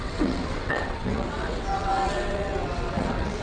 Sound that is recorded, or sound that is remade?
remade